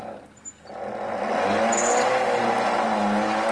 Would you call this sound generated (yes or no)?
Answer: no